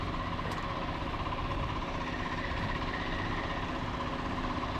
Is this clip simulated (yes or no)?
no